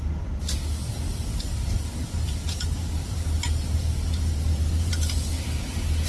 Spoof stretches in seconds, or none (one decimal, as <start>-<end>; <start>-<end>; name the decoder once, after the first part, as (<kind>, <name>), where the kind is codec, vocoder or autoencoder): 1.3-4.9 (vocoder, BigVGAN v2)